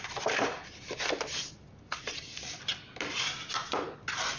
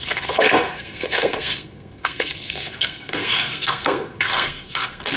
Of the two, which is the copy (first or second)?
second